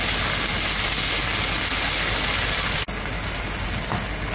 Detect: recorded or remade recorded